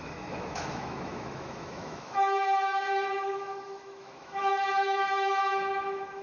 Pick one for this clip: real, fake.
fake